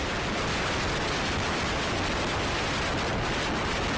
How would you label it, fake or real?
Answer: real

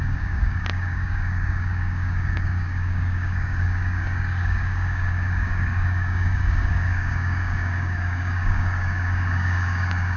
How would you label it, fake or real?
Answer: fake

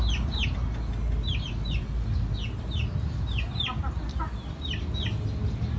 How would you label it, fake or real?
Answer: real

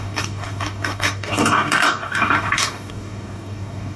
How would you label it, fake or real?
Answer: fake